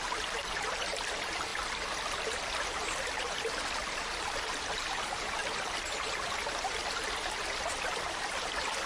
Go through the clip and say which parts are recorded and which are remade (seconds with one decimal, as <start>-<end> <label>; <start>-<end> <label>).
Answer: 0.0-1.5 remade; 1.5-4.2 recorded; 4.2-8.9 remade